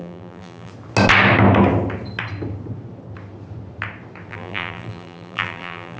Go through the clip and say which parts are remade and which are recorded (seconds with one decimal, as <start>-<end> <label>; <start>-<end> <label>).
0.0-0.7 remade; 0.7-4.3 recorded; 4.3-6.0 remade